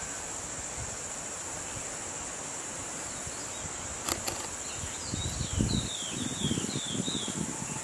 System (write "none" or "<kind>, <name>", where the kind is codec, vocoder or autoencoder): none